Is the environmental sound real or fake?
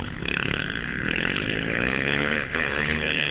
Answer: fake